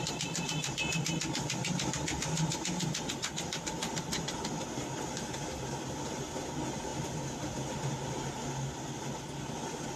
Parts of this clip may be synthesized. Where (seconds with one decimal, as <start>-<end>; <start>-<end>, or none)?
none